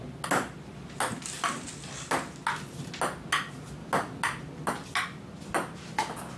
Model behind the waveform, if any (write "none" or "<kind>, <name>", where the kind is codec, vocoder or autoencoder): none